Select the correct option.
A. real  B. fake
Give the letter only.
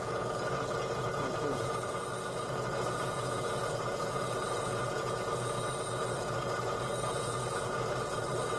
B